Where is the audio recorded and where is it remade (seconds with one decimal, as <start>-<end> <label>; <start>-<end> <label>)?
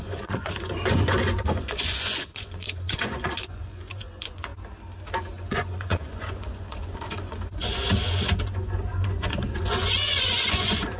0.0-4.5 remade; 4.5-5.3 recorded; 5.3-11.0 remade